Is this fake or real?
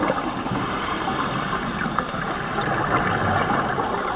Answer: real